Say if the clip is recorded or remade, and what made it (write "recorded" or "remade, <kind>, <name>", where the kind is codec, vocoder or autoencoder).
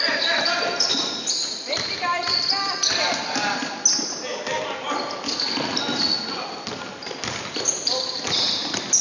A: recorded